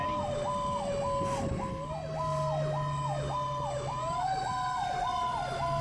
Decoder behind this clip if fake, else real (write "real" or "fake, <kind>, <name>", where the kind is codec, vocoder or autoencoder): real